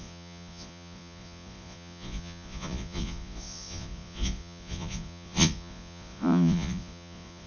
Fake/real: fake